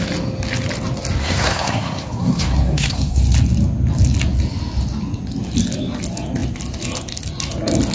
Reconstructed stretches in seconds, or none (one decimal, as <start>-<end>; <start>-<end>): 1.2-3.2